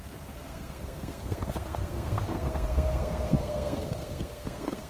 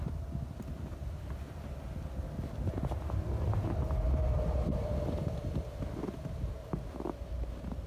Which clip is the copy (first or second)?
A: first